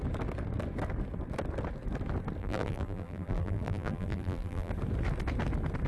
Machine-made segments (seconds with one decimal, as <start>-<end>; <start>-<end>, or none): 2.4-4.7